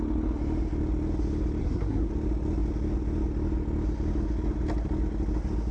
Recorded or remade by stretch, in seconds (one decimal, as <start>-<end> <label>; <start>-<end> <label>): 0.0-1.6 recorded; 1.6-2.1 remade; 2.1-5.7 recorded